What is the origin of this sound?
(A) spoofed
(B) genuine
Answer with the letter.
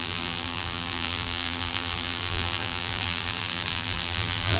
A